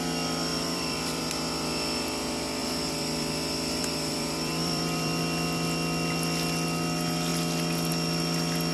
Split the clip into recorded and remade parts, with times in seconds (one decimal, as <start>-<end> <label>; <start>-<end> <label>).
0.0-0.5 recorded; 0.5-1.2 remade; 1.2-2.6 recorded; 2.6-5.2 remade; 5.2-8.7 recorded